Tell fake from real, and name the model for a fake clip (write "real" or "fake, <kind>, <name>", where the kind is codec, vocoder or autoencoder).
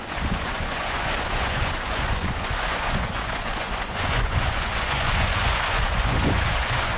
fake, vocoder, Vocos